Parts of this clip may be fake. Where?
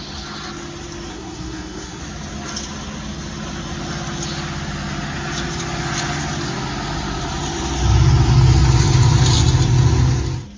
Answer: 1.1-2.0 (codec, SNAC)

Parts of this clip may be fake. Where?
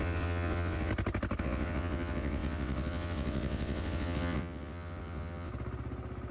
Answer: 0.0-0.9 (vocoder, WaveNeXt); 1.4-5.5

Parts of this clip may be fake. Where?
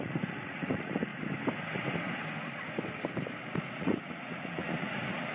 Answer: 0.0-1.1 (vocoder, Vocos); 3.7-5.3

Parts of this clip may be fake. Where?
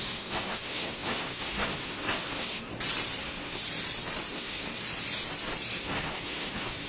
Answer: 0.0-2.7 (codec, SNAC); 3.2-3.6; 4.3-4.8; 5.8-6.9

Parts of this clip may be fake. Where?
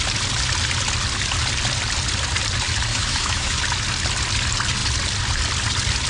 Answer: 2.9-3.6 (autoencoder, DAC-VAE)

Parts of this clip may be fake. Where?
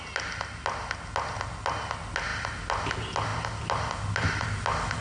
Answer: none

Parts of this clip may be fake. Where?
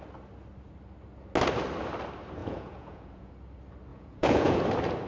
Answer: 2.4-3.3 (vocoder, Vocos); 3.9-4.6